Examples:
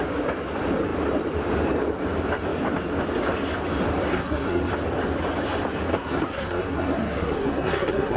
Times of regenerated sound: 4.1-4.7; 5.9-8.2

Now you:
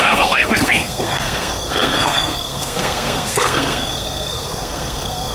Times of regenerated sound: 0.0-5.3

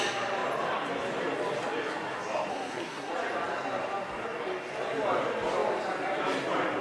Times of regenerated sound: 2.5-3.1

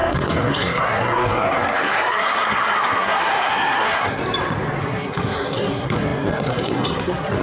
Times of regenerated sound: 0.0-4.2; 4.8-7.4

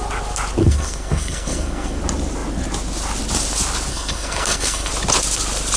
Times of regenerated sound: 0.6-2.0; 3.9-4.9

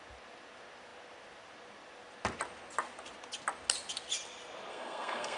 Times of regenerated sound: 4.7-5.4

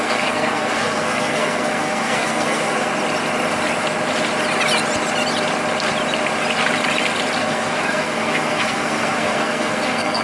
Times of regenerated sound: 0.0-2.9; 7.4-10.2